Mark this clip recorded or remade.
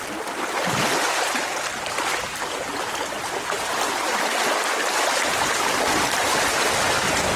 recorded